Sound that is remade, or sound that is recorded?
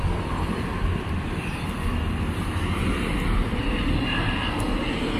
remade